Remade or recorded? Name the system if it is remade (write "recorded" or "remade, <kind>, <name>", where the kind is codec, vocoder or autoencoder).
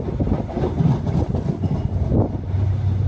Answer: recorded